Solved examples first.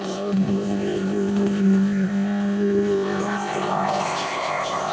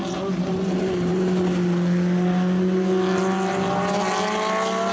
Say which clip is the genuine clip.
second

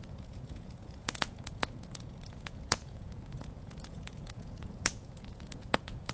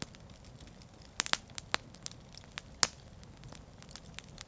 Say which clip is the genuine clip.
second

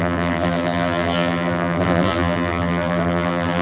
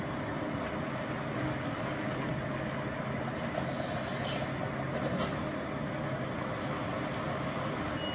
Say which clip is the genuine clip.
second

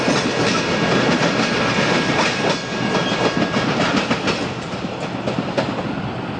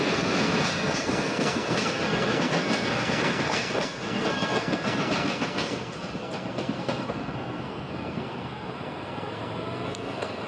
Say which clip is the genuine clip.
first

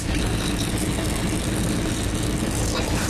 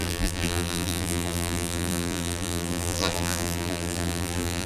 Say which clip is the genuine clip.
first